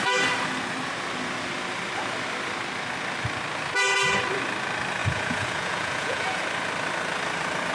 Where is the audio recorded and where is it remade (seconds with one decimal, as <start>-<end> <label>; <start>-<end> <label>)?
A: 0.0-5.0 recorded; 5.0-6.4 remade; 6.4-7.7 recorded